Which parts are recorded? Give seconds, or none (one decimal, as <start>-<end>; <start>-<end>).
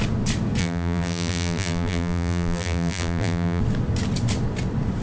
0.0-0.6; 3.6-5.0